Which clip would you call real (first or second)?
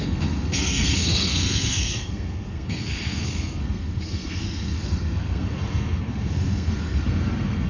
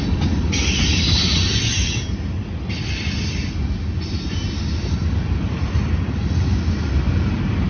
second